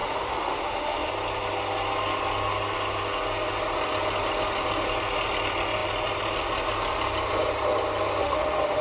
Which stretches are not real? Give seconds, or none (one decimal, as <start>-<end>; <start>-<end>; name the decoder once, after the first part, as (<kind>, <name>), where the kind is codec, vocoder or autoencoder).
0.0-1.1 (autoencoder, DAC-VAE); 8.2-8.8